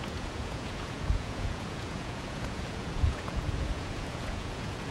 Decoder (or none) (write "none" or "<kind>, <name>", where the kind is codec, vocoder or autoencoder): vocoder, Vocos